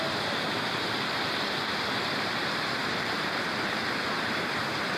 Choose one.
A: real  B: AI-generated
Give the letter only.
B